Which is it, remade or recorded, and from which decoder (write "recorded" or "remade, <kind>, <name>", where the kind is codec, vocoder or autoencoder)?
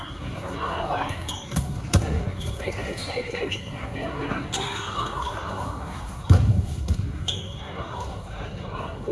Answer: remade, codec, SNAC